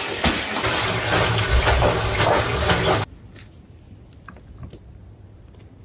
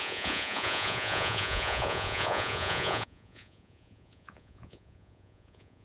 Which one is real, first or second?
first